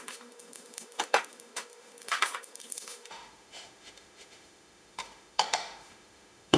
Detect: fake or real fake